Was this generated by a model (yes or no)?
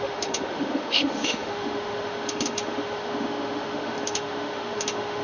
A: yes